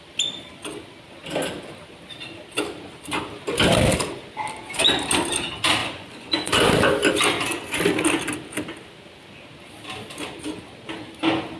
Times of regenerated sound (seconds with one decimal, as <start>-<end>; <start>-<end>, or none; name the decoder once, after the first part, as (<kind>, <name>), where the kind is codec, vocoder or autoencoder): 5.8-6.5 (vocoder, Vocos)